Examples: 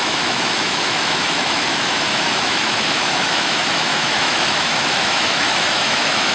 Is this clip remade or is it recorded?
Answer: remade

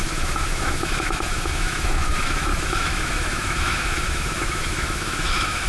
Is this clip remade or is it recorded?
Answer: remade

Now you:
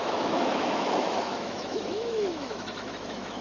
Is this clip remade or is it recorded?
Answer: remade